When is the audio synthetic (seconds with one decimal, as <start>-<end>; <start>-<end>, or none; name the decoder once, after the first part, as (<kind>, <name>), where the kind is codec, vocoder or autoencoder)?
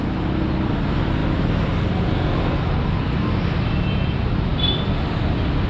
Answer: none